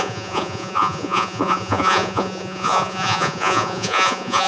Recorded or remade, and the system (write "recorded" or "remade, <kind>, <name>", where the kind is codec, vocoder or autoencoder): remade, vocoder, Vocos